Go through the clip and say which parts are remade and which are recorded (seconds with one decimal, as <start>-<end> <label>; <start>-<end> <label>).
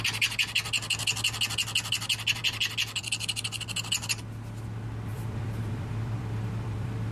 0.0-5.1 recorded; 5.1-7.1 remade